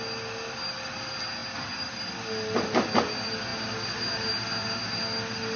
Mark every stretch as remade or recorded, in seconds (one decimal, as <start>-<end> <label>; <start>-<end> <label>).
0.0-5.6 recorded